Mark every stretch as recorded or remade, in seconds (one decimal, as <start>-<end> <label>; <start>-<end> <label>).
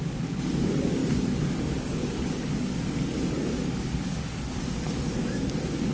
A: 0.0-5.9 remade